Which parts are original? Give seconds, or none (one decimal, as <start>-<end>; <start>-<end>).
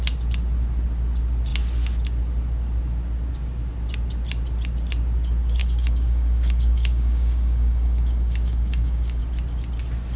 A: 0.0-5.6; 9.2-10.2